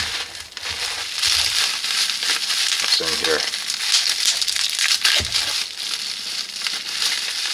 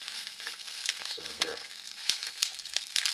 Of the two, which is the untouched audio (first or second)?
first